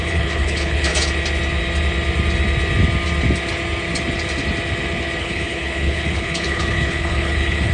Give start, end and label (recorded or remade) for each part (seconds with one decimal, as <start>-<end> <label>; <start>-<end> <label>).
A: 0.0-0.9 remade; 0.9-5.2 recorded; 5.2-7.7 remade